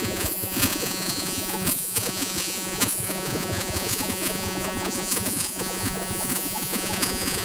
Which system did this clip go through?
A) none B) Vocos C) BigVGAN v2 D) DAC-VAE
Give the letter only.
B